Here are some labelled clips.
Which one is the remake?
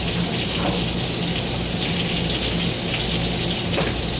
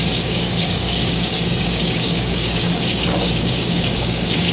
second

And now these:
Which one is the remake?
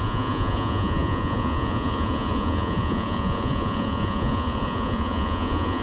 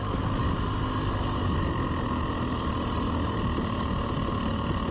first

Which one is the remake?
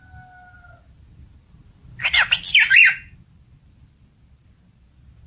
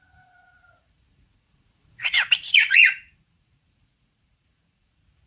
second